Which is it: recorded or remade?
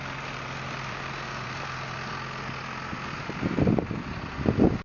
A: recorded